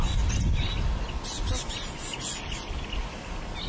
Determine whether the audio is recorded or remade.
recorded